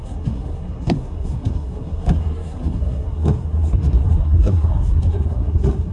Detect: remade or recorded remade